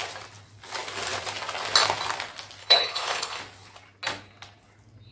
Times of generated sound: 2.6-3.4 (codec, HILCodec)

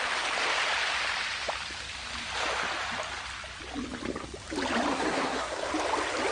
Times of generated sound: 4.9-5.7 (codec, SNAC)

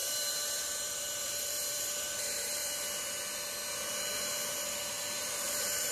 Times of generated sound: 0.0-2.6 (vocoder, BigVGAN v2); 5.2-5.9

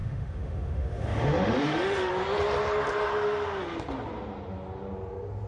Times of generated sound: 0.0-2.1 (autoencoder, DAC-VAE)

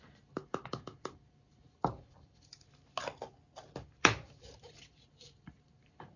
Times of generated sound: 0.0-2.5 (vocoder, BigVGAN v2); 4.0-6.2

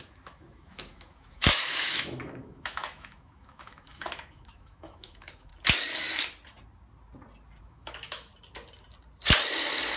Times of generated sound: 0.0-5.5 (autoencoder, DAC-VAE); 7.6-8.3

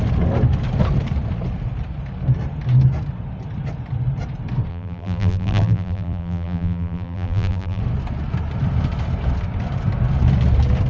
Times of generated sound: 4.7-7.8 (vocoder, BigVGAN v2)

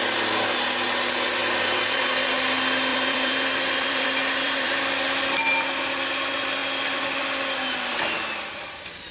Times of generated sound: 1.4-2.0 (vocoder, BigVGAN v2); 2.9-4.8